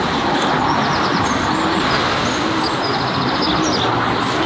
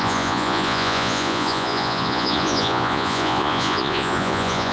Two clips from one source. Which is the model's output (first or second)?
second